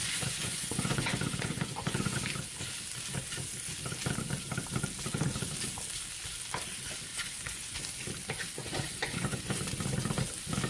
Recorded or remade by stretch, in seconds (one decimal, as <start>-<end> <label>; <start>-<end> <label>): 0.0-2.2 remade; 2.2-7.1 recorded; 7.1-7.8 remade; 7.8-8.6 recorded; 8.6-9.6 remade; 9.6-10.7 recorded